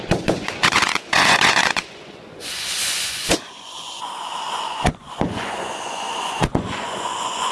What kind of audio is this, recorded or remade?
remade